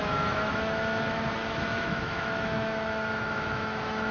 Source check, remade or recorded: remade